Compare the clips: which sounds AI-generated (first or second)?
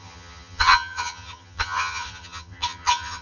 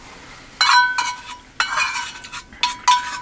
first